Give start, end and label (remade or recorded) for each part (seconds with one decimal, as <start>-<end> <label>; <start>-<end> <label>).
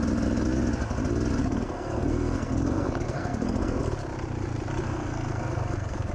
0.0-1.4 recorded; 1.4-3.8 remade; 3.8-4.8 recorded; 4.8-6.1 remade